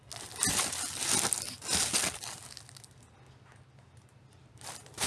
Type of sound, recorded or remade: recorded